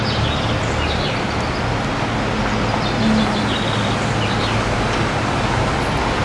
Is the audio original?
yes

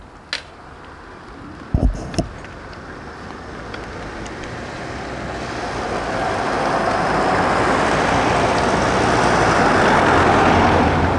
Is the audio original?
yes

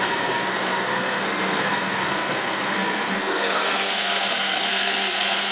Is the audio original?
no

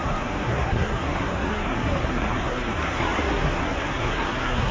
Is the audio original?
no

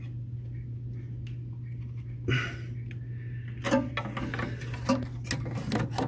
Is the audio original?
yes